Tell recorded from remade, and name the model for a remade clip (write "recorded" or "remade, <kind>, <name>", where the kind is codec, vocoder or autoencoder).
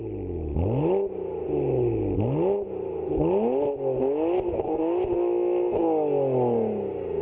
recorded